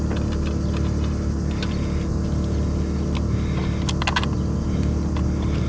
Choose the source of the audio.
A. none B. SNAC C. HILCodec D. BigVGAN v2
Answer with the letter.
A